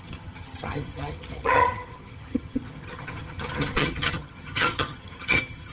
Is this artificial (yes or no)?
yes